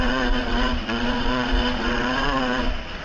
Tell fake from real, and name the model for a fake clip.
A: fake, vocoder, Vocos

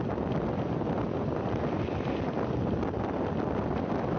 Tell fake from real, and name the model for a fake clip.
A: real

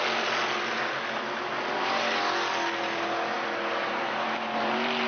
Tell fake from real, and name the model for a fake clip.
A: real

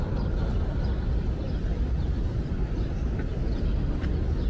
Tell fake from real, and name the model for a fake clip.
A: real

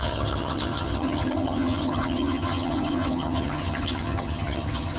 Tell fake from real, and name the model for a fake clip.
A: fake, vocoder, HiFi-GAN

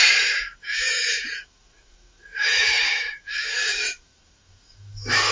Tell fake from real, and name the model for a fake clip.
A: fake, autoencoder, DAC-VAE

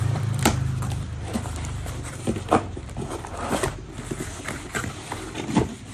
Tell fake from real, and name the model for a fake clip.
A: fake, vocoder, BigVGAN v2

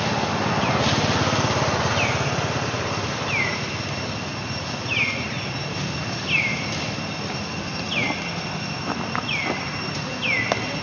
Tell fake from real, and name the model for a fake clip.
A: real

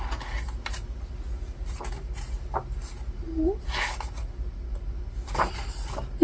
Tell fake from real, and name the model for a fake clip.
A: real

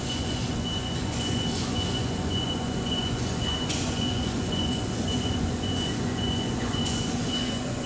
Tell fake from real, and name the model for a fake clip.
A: fake, vocoder, Vocos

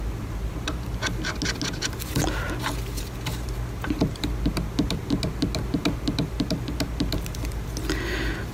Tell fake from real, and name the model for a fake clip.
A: real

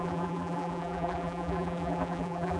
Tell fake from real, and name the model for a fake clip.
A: fake, vocoder, BigVGAN v2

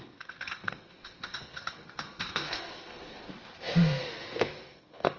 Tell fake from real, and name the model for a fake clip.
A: fake, codec, SNAC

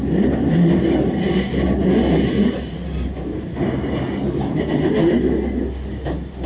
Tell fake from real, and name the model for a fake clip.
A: real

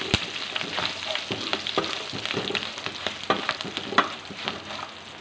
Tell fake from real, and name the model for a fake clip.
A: real